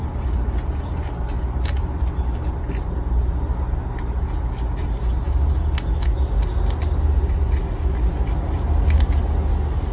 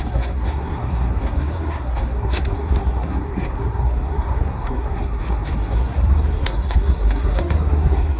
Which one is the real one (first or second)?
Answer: first